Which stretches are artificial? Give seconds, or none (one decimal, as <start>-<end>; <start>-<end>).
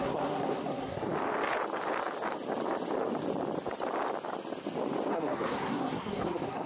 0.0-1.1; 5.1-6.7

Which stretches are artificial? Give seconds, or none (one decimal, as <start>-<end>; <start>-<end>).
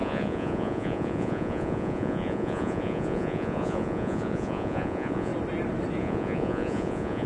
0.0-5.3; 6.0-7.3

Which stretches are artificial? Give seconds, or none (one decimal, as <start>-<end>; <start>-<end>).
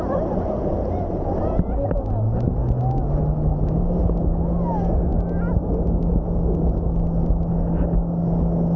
none